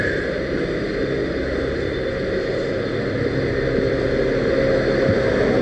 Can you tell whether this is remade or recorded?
recorded